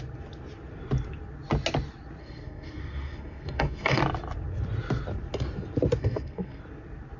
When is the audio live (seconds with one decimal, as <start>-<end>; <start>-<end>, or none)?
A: 0.0-2.2; 4.0-6.0; 6.6-7.2